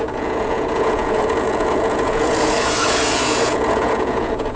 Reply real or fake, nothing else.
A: fake